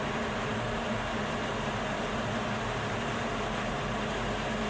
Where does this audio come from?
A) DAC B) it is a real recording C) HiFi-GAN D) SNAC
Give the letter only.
B